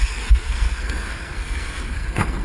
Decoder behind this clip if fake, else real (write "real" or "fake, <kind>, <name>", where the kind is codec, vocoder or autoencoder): fake, codec, SNAC